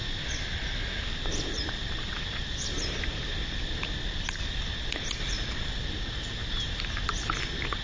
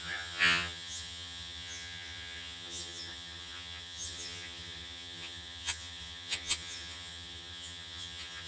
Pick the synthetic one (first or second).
second